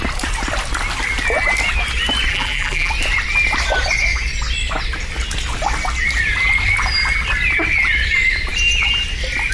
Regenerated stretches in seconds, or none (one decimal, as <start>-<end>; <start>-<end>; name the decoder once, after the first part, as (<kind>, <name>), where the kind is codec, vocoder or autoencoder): 2.3-2.9 (vocoder, BigVGAN v2)